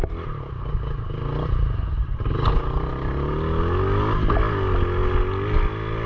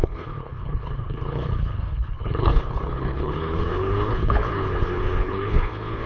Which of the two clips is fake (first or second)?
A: second